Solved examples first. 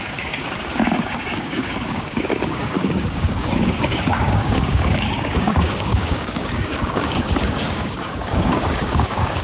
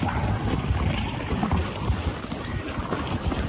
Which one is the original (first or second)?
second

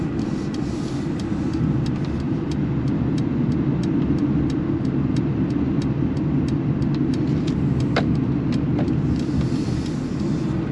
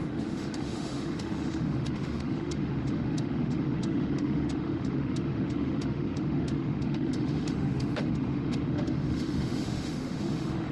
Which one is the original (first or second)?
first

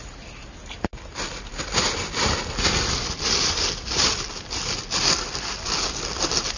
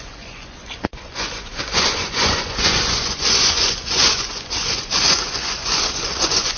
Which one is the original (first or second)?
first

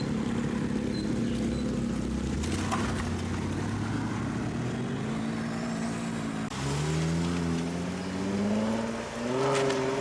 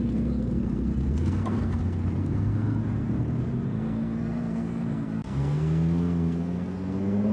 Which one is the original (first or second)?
first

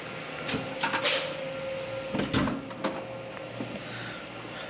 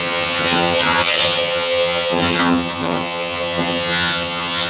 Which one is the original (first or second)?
first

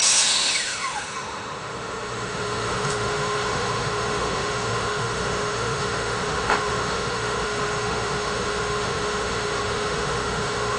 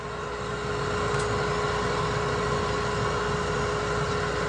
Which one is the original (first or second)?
second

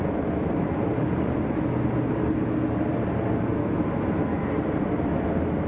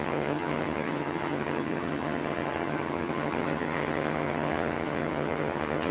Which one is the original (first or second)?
first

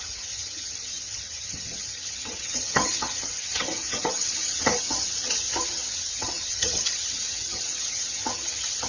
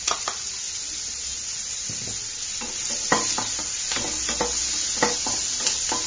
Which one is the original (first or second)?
second